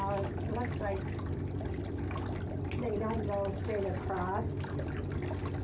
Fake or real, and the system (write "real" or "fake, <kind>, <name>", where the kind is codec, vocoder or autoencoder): real